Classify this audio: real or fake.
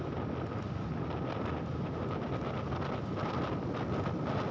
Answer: real